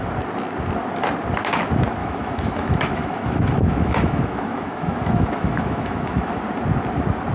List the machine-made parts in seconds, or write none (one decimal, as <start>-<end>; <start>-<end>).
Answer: 2.0-6.4